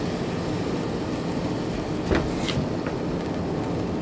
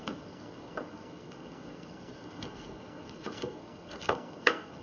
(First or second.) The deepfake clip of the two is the second